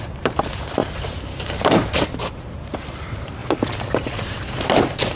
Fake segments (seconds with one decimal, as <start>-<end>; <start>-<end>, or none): 0.0-3.4; 4.2-5.2